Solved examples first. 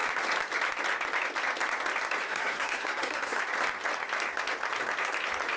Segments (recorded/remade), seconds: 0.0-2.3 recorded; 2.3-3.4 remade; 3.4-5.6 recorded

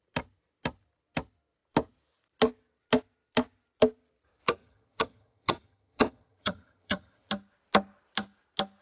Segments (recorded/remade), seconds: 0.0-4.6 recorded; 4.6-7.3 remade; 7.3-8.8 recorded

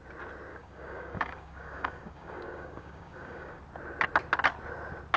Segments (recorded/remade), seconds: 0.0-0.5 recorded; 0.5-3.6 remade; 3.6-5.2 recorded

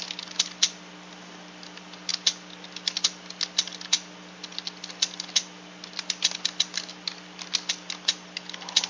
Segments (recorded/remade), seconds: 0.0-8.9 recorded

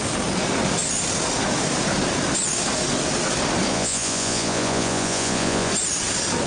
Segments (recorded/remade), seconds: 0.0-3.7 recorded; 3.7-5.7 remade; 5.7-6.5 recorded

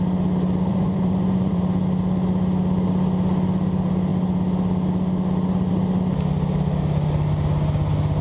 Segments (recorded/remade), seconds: 0.0-0.7 recorded; 0.7-1.6 remade; 1.6-8.2 recorded